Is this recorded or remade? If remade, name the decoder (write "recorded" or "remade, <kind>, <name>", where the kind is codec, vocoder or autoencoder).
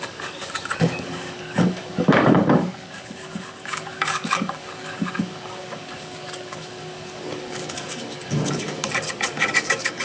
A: remade, codec, DAC